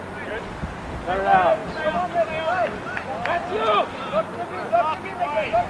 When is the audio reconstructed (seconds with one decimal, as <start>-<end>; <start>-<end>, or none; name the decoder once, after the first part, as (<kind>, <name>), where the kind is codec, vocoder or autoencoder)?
none